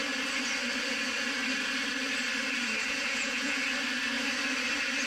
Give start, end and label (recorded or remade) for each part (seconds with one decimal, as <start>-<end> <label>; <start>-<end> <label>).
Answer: 0.0-2.9 recorded; 2.9-3.6 remade; 3.6-5.1 recorded

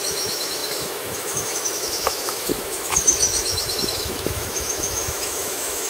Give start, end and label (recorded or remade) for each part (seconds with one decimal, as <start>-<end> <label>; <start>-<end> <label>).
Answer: 0.0-5.9 remade

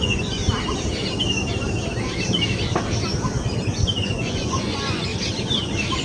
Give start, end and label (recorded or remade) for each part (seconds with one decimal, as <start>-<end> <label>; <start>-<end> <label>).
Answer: 0.0-0.4 remade; 0.4-4.0 recorded; 4.0-5.1 remade; 5.1-6.0 recorded